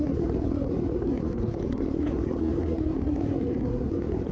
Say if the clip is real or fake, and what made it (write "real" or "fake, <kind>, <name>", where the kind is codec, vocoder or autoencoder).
fake, codec, SNAC